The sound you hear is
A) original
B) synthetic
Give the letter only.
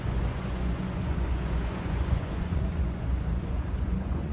B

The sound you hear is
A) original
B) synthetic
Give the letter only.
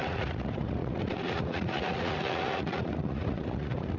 B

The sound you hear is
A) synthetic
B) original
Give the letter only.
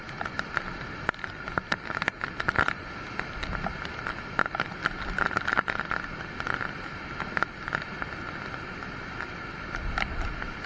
B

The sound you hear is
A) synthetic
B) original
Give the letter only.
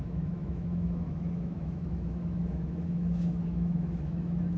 A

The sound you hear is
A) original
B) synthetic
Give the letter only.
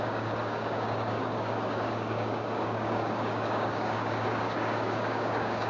B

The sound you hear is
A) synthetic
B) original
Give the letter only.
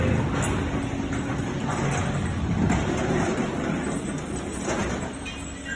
B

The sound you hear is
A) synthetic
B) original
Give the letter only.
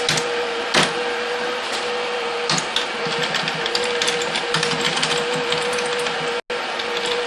B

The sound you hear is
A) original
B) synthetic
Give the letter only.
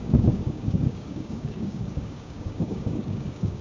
B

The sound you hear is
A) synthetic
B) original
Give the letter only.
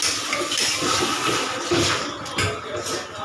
B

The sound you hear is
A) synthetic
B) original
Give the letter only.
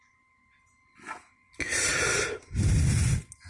B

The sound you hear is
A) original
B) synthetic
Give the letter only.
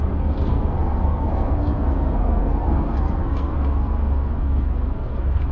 B